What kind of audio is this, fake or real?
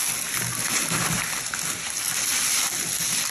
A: real